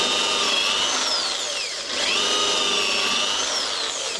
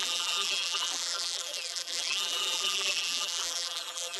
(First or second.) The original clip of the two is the first